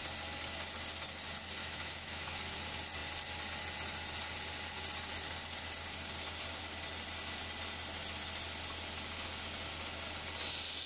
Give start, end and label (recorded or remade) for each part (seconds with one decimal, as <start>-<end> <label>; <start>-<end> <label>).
0.0-1.6 recorded; 1.6-2.4 remade; 2.4-10.9 recorded